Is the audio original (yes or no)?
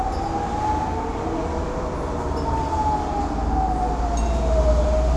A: yes